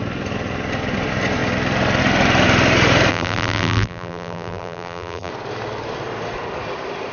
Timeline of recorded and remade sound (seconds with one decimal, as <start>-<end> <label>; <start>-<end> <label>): 0.0-3.1 recorded; 3.1-5.3 remade; 5.3-7.1 recorded